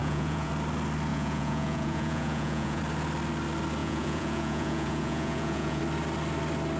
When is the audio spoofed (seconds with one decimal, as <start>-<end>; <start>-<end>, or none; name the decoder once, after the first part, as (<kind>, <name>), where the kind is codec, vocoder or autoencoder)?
0.0-0.5 (vocoder, Vocos); 1.1-2.8; 3.8-5.8